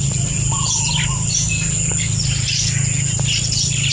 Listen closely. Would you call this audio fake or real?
real